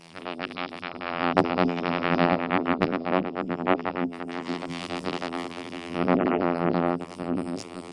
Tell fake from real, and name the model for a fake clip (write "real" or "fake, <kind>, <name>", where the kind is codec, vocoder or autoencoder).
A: fake, vocoder, BigVGAN v2